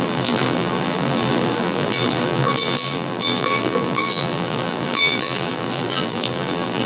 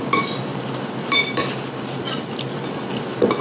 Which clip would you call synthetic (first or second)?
first